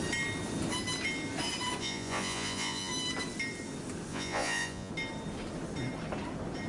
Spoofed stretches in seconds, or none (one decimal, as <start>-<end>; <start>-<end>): 1.8-2.9; 4.1-4.9